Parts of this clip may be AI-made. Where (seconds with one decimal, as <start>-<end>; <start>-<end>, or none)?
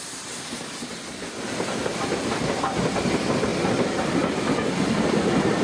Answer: none